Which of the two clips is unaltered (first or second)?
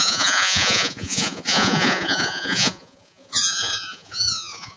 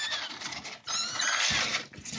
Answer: second